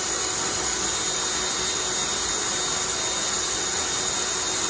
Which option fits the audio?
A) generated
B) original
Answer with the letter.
B